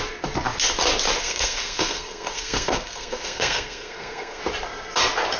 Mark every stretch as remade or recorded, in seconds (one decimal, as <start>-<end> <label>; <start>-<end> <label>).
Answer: 0.0-1.2 recorded; 1.2-4.4 remade; 4.4-5.4 recorded